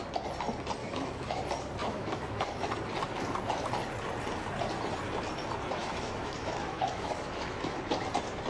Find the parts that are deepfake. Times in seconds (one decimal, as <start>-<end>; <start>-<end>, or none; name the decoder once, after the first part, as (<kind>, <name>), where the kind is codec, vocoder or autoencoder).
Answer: 0.8-1.4 (autoencoder, DAC-VAE); 1.8-2.7; 5.8-7.8